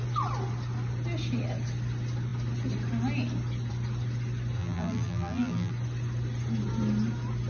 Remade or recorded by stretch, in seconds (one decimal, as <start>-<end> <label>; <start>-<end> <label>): 0.0-4.6 recorded; 4.6-5.7 remade; 5.7-7.5 recorded